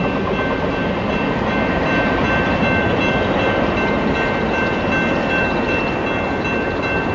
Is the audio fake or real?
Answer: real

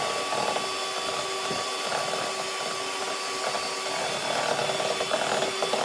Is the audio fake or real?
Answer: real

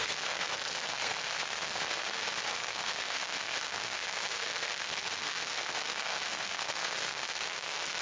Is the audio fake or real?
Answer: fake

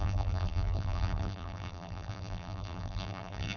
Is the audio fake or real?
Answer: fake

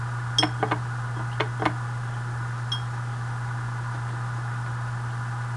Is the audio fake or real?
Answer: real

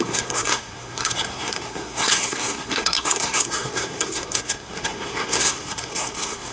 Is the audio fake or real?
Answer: fake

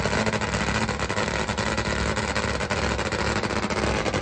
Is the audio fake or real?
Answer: real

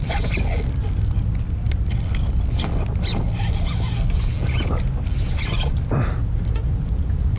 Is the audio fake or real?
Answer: real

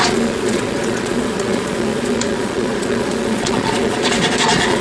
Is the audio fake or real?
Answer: fake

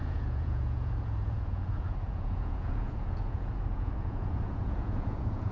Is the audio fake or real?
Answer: fake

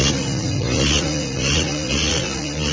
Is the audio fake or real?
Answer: fake